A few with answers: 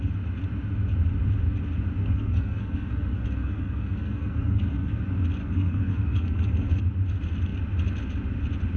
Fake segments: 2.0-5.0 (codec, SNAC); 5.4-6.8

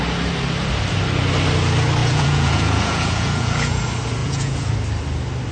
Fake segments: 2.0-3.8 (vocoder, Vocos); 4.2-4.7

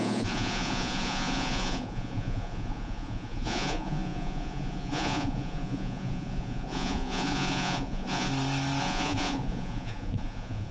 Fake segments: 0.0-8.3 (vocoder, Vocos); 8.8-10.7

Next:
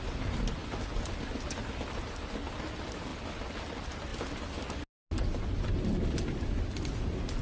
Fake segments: none

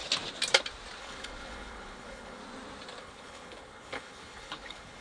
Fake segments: 1.0-2.4 (codec, HILCodec); 3.0-5.0

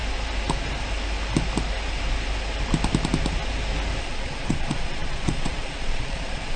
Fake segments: 4.0-6.6 (vocoder, Vocos)

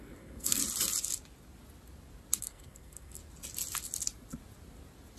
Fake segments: 0.0-0.6 (codec, SNAC); 2.4-3.2

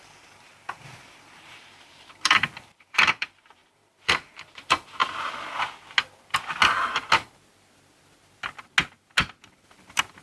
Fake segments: 0.0-5.0 (vocoder, BigVGAN v2); 9.5-10.2